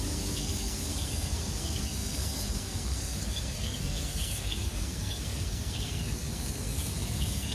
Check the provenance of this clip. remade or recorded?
remade